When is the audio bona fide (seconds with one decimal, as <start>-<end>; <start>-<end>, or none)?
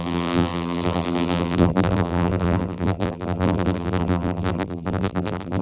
none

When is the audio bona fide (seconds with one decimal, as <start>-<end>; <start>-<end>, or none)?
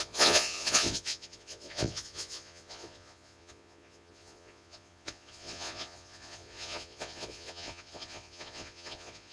none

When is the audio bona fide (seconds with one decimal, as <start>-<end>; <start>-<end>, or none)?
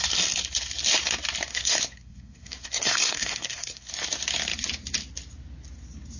0.0-1.5; 3.9-6.2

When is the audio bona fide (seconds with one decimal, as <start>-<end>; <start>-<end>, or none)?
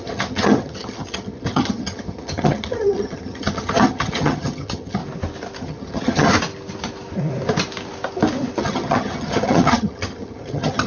5.0-5.6; 6.3-8.6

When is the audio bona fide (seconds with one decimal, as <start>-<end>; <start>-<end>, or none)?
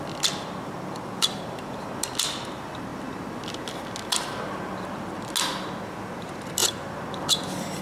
0.0-7.8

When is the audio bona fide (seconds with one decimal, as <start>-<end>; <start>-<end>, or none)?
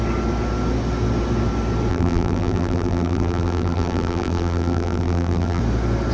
0.0-1.9; 5.6-6.1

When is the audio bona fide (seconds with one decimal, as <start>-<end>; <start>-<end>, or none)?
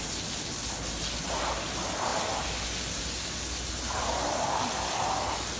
0.0-5.6